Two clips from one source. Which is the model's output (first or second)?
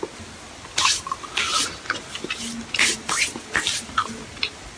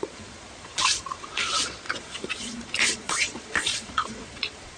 second